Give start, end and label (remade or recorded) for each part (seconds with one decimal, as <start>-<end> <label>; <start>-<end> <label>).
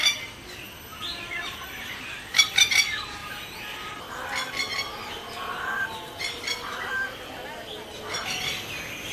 0.0-0.9 recorded; 0.9-2.3 remade; 2.3-3.2 recorded; 3.2-3.9 remade; 3.9-9.1 recorded